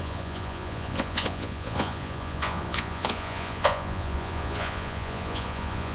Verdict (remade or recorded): remade